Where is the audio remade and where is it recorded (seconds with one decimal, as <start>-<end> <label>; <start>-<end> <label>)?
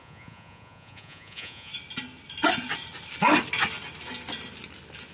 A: 0.0-1.7 remade; 1.7-5.1 recorded